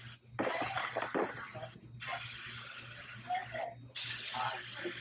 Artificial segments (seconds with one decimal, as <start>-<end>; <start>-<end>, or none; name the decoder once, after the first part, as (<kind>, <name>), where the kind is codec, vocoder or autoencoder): none